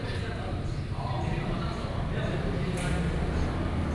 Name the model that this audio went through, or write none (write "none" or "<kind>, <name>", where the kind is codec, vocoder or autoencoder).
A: vocoder, BigVGAN v2